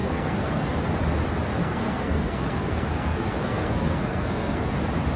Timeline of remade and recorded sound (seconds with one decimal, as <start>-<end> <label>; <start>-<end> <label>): 0.0-0.8 remade; 0.8-1.6 recorded; 1.6-4.7 remade; 4.7-5.2 recorded